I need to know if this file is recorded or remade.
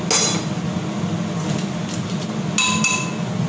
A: recorded